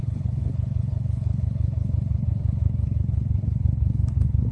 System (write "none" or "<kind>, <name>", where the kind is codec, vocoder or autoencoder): codec, HILCodec